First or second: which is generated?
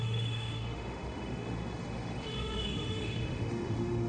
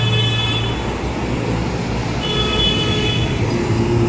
first